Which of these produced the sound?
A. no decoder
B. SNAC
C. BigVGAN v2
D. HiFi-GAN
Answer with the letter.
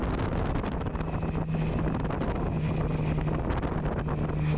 A